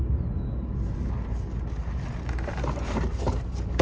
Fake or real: fake